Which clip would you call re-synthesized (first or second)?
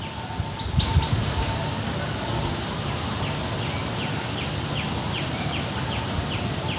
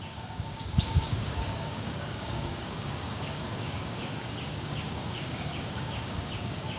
second